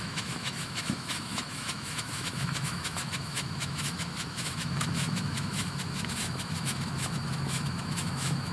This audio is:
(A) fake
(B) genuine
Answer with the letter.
A